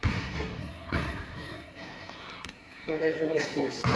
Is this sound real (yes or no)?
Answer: no